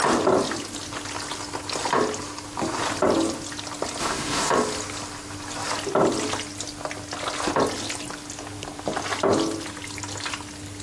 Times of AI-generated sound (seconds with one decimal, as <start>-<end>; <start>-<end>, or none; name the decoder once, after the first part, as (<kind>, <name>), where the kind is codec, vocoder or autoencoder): 4.0-4.5 (autoencoder, DAC-VAE)